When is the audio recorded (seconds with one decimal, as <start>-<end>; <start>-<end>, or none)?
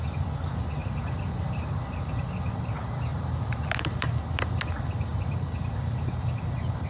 0.0-3.1; 4.4-5.1; 6.2-6.9